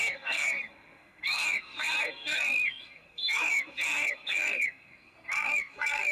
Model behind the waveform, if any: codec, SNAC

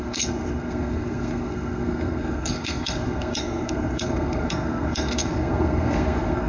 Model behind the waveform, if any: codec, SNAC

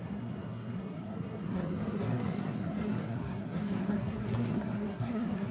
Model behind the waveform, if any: codec, SNAC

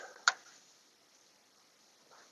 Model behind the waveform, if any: none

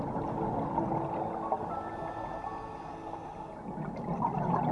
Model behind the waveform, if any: none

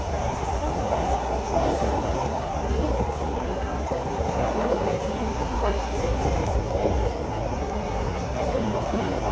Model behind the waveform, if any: codec, SNAC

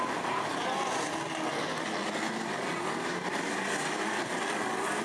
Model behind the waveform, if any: none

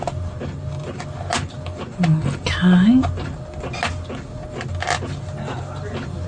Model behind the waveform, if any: none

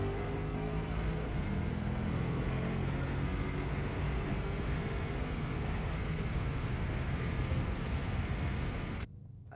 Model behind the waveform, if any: codec, SNAC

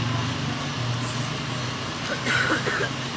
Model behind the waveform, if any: none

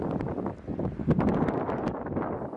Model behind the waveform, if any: none